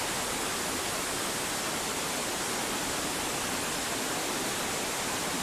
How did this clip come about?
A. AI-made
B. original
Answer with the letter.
B